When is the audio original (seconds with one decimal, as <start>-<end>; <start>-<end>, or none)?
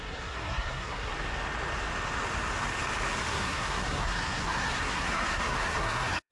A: 1.1-3.3